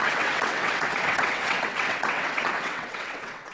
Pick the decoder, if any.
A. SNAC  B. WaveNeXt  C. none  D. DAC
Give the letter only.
B